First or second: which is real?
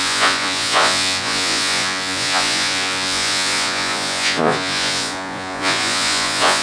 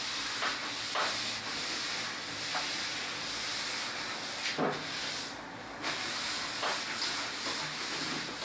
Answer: second